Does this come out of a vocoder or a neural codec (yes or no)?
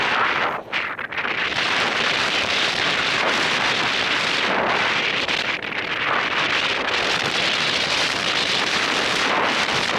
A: yes